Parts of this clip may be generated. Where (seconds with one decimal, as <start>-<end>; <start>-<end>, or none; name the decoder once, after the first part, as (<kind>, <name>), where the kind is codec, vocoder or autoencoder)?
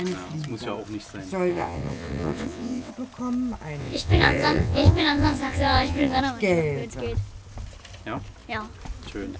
1.5-2.9 (vocoder, WaveNeXt); 3.8-6.2